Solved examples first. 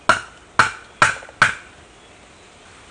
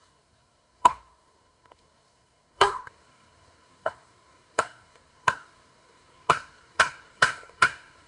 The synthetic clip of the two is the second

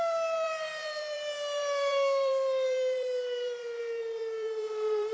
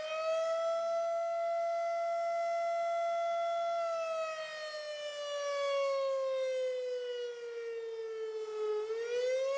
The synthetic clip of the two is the first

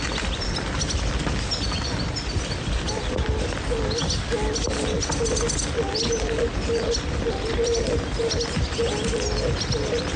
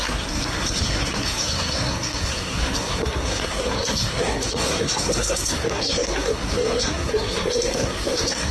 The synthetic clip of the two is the second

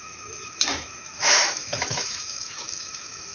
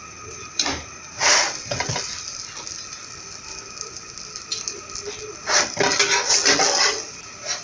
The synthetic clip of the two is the first